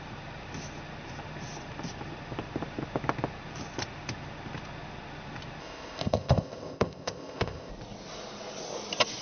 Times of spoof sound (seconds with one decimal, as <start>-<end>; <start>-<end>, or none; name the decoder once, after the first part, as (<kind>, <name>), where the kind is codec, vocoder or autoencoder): 5.6-7.7 (codec, ZipCodec)